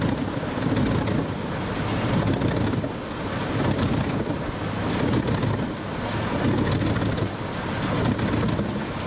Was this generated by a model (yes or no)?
no